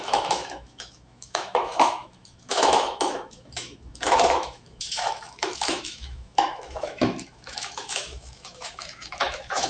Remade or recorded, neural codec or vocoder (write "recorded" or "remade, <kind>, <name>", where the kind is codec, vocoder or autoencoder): remade, autoencoder, DAC-VAE